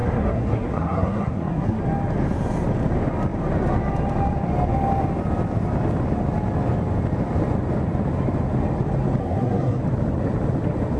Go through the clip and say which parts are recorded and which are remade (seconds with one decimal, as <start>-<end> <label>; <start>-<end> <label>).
0.0-1.8 remade; 1.8-9.2 recorded; 9.2-9.8 remade; 9.8-11.0 recorded